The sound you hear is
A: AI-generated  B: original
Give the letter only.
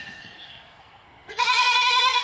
A